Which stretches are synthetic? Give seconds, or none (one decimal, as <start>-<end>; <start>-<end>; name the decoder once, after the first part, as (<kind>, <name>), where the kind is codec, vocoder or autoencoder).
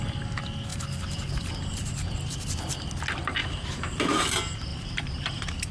0.7-1.3 (vocoder, BigVGAN v2); 3.4-4.2; 4.7-5.7